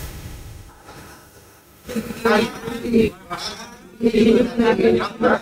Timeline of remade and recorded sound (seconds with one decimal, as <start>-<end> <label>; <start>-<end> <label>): 0.0-2.2 remade; 2.2-5.4 recorded